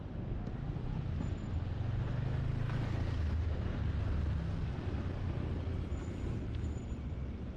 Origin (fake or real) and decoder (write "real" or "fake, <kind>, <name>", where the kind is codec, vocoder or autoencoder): real